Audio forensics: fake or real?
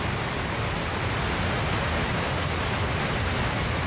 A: real